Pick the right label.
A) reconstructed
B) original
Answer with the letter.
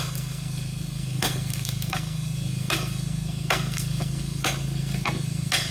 A